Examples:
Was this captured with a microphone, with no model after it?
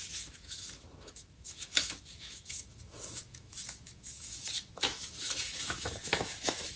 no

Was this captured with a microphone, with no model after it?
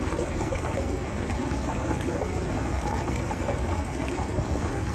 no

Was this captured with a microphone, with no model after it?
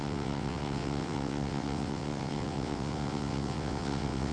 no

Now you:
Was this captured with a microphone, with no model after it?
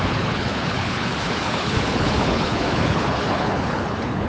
no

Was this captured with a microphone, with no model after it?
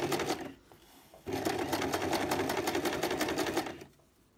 yes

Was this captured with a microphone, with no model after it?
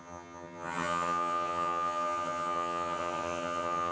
no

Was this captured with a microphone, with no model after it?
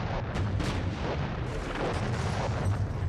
yes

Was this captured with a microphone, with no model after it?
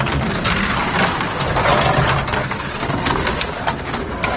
no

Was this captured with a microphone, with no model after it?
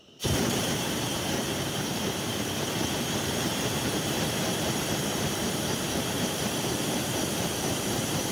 no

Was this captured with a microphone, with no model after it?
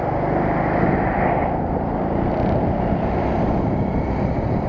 yes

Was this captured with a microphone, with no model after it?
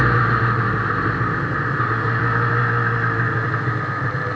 yes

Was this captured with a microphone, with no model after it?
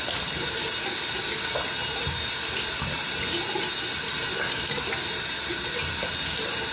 yes